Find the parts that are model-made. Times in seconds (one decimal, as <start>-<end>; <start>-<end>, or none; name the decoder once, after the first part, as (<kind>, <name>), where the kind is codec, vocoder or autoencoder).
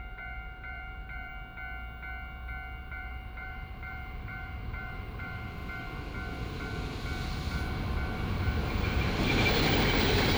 0.0-1.3 (vocoder, BigVGAN v2); 2.8-5.6; 8.8-10.4